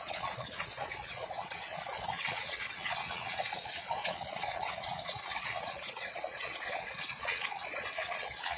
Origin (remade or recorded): remade